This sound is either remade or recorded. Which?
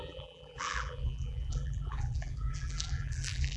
remade